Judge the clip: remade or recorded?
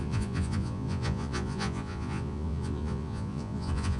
remade